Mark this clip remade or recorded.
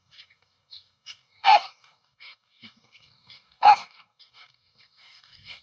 remade